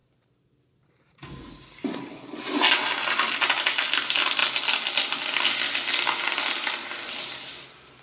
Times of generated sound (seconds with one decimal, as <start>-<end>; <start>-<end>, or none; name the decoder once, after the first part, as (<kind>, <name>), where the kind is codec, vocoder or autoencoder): none